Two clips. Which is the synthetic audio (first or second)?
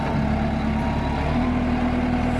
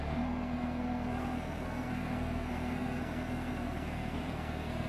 second